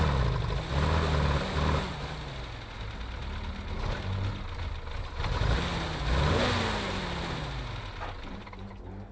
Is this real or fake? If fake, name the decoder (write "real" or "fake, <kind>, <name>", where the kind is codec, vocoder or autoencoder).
real